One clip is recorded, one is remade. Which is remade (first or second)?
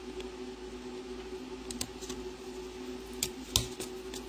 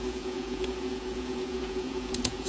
second